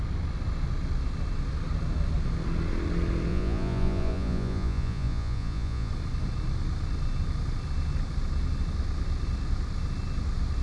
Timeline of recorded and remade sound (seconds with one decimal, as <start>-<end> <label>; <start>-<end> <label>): 0.0-3.3 recorded; 3.3-5.9 remade; 5.9-10.6 recorded